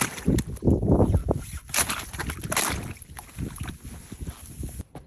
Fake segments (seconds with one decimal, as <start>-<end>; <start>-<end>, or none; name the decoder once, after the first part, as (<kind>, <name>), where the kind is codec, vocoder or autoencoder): none